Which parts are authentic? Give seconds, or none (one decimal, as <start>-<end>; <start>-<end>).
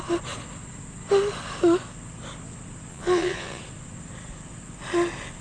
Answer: 0.0-2.9; 3.6-5.4